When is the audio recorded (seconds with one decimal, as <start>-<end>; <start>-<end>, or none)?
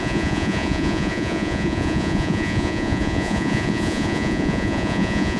none